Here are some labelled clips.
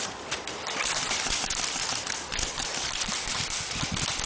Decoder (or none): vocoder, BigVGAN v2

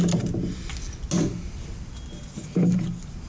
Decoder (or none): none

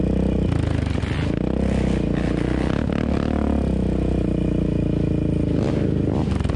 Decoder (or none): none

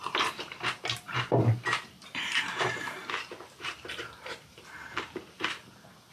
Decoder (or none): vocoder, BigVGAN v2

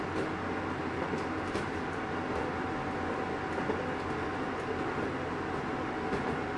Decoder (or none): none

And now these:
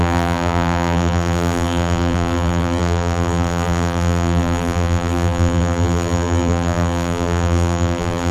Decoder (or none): vocoder, BigVGAN v2